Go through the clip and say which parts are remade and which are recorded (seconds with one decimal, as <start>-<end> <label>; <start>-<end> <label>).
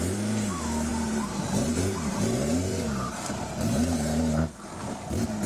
0.0-0.9 recorded; 0.9-4.2 remade; 4.2-5.5 recorded